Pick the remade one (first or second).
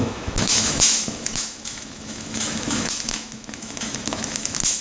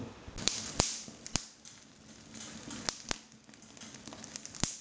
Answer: first